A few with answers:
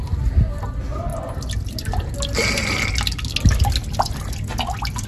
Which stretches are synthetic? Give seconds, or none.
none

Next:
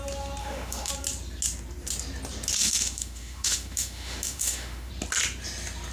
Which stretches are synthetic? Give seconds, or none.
0.4-0.9 (autoencoder, DAC-VAE); 2.6-4.9

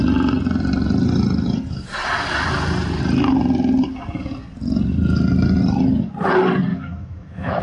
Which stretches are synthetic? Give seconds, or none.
6.7-7.6 (autoencoder, DAC-VAE)

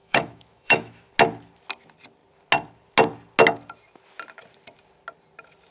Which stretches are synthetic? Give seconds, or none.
0.0-1.1 (autoencoder, DAC-VAE)